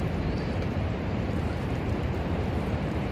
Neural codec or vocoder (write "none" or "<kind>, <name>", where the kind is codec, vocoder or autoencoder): vocoder, BigVGAN v2